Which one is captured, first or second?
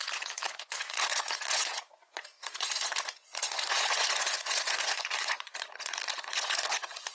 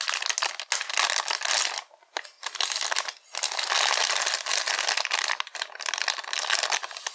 second